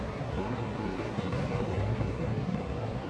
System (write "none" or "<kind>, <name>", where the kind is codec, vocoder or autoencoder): codec, SNAC